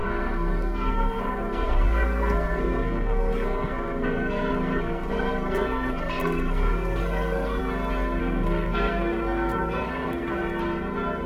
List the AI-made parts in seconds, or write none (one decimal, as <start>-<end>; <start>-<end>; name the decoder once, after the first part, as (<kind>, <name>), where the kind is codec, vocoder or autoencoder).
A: 0.0-7.6 (codec, SNAC); 8.2-10.4